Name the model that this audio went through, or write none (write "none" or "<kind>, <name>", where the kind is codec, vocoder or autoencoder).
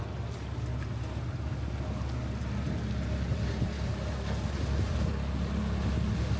none